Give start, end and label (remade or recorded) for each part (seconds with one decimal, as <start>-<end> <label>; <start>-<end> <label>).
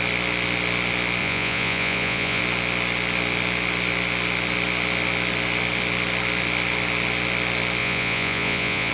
0.0-1.2 recorded; 1.2-2.4 remade; 2.4-7.8 recorded; 7.8-8.9 remade